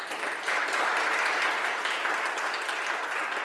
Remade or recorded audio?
recorded